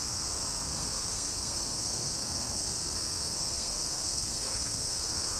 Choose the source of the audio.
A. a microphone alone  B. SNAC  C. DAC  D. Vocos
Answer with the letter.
B